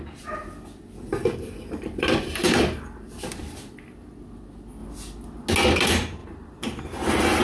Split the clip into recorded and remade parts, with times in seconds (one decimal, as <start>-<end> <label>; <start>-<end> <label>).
0.0-1.1 recorded; 1.1-4.1 remade; 4.1-6.2 recorded; 6.2-6.8 remade; 6.8-7.4 recorded